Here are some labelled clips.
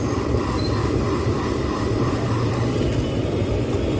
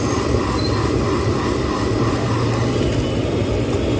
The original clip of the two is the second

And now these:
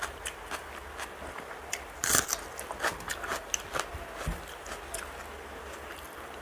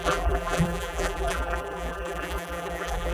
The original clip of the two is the first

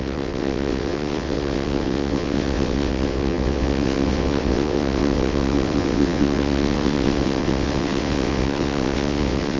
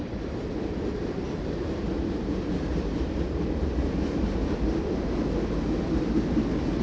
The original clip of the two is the second